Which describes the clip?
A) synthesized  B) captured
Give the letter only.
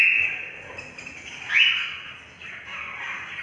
B